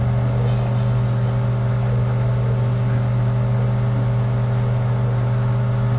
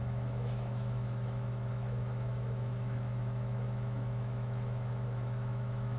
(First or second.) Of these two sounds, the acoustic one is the first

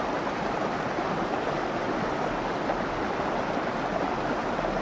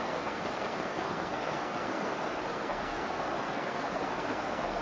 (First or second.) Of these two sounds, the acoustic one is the first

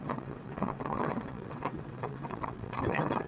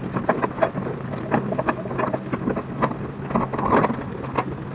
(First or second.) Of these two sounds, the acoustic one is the second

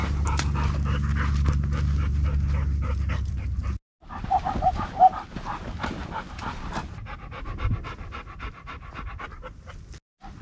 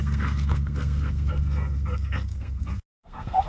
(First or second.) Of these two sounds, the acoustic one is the first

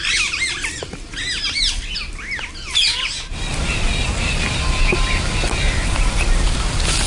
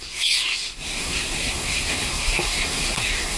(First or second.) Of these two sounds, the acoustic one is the first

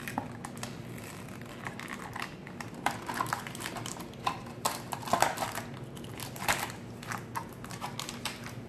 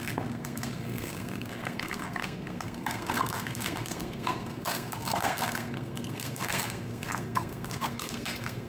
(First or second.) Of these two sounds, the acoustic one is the first